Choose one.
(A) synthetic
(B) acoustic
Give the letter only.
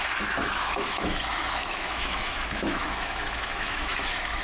A